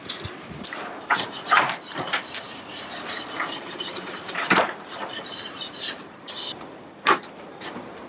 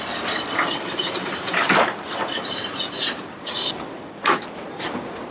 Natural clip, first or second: second